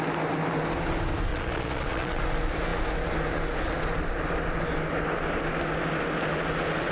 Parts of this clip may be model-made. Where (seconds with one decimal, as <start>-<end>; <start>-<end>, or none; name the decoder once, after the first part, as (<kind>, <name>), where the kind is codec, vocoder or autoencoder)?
1.3-2.2 (vocoder, Vocos)